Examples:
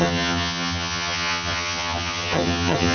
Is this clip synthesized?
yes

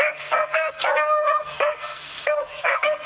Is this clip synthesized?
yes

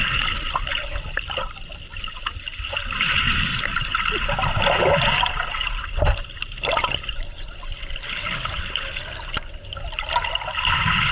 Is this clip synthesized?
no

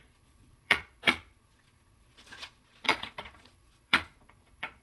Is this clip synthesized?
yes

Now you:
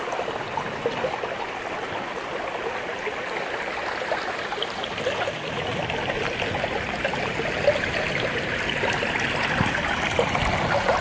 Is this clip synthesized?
no